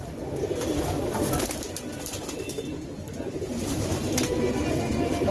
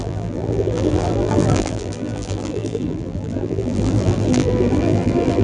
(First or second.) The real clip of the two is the first